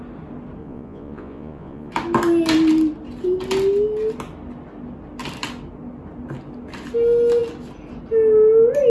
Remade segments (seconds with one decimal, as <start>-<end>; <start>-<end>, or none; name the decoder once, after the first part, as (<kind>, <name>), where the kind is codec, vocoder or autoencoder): 0.6-1.9 (vocoder, Vocos)